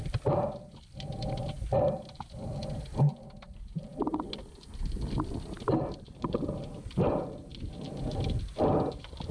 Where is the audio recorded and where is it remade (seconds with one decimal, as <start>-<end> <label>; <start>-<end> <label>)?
0.0-9.3 recorded

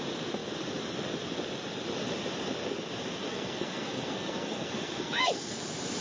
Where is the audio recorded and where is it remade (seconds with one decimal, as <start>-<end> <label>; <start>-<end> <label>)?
0.0-3.2 recorded; 3.2-5.6 remade; 5.6-6.0 recorded

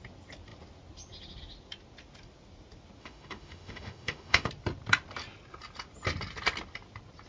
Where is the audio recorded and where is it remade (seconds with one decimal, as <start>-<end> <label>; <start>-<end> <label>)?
0.0-3.0 recorded; 3.0-4.5 remade; 4.5-7.3 recorded

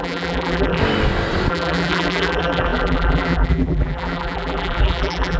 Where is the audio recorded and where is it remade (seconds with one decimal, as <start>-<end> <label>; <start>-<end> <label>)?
0.0-0.8 remade; 0.8-1.5 recorded; 1.5-5.4 remade

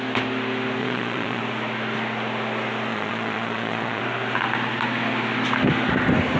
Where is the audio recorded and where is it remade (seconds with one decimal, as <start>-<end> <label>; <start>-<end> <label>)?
0.0-0.8 recorded; 0.8-1.4 remade; 1.4-2.9 recorded; 2.9-4.0 remade; 4.0-6.4 recorded

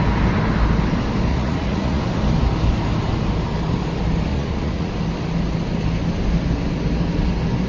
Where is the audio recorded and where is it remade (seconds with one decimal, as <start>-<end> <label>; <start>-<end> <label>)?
0.0-1.3 recorded; 1.3-2.0 remade; 2.0-4.3 recorded; 4.3-4.9 remade; 4.9-7.7 recorded

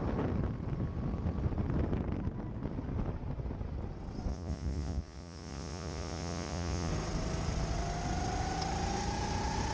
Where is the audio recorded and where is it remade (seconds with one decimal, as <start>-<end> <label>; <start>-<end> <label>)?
0.0-4.3 recorded; 4.3-6.9 remade; 6.9-9.7 recorded

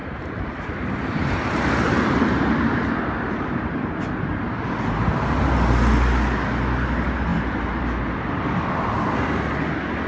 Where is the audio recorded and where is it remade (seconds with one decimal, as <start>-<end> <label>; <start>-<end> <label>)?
0.0-3.9 remade; 3.9-7.3 recorded; 7.3-7.8 remade; 7.8-10.1 recorded